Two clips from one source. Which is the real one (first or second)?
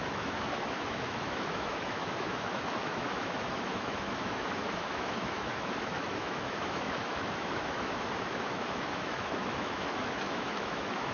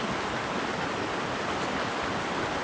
second